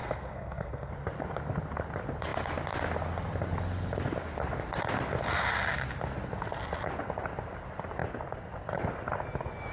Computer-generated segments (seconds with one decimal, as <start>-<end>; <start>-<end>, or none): 0.0-0.9